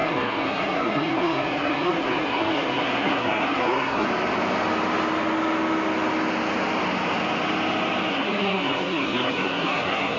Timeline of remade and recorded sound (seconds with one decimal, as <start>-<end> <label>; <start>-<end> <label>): 0.0-4.1 remade; 4.1-8.1 recorded; 8.1-10.2 remade